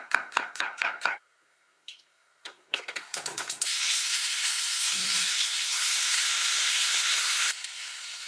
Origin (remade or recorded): remade